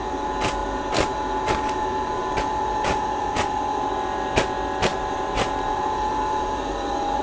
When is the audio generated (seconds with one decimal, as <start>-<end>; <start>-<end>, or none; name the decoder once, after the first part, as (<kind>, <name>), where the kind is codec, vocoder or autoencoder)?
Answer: 0.6-3.6 (vocoder, BigVGAN v2); 4.9-7.2